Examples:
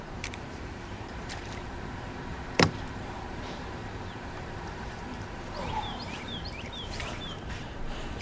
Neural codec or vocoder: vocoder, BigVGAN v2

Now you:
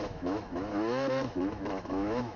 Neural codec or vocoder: autoencoder, DAC-VAE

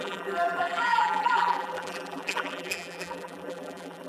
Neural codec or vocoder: vocoder, BigVGAN v2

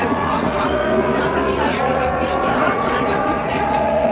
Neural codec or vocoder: vocoder, Vocos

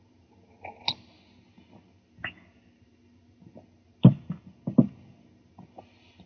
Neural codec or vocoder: none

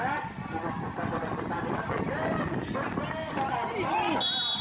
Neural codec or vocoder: none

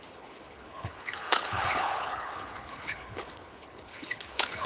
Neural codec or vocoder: codec, HILCodec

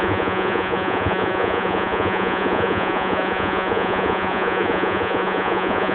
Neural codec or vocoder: vocoder, Vocos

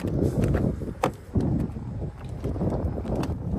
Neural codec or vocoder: none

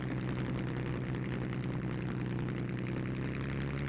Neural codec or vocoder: vocoder, BigVGAN v2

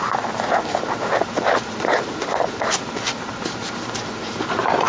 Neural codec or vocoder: none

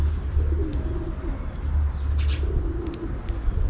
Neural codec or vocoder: none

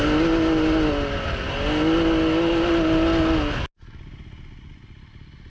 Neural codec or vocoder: none